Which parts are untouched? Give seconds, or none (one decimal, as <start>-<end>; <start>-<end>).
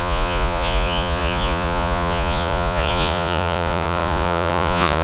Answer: none